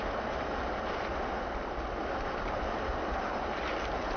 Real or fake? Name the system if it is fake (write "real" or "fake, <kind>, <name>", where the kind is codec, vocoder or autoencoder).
real